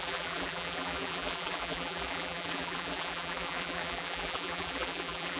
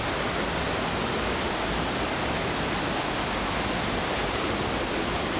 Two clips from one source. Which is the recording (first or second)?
second